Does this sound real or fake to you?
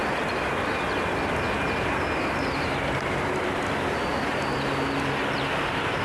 real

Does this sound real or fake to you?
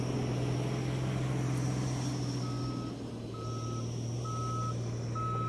real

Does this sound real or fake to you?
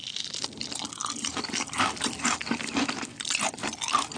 real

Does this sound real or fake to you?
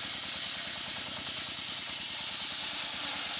real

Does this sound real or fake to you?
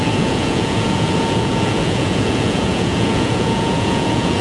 fake